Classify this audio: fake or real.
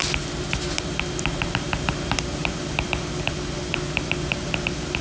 real